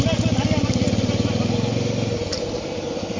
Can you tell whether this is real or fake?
real